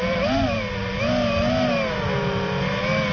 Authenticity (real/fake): real